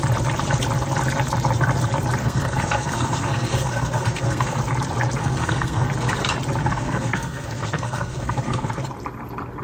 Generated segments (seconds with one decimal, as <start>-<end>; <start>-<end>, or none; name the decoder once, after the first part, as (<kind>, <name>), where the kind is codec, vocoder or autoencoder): 2.2-4.6 (codec, SNAC); 5.2-5.9; 6.6-8.7